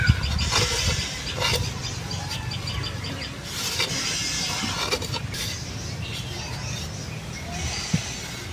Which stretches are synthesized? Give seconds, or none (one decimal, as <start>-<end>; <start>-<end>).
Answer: none